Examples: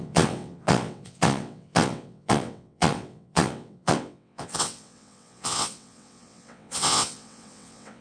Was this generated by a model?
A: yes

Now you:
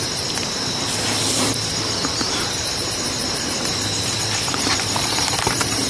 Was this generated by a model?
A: yes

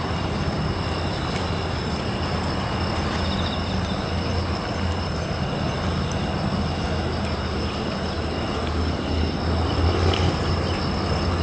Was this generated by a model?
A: no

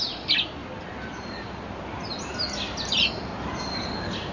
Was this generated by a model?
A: no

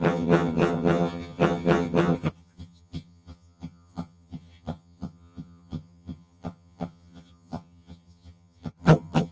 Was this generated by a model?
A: yes